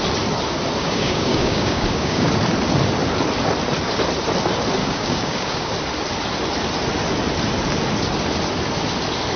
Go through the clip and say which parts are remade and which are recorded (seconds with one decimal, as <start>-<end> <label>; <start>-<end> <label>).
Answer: 0.0-0.8 recorded; 0.8-2.3 remade; 2.3-4.8 recorded; 4.8-5.7 remade; 5.7-9.4 recorded